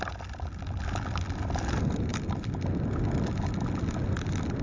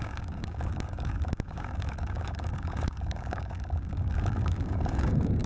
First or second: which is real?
first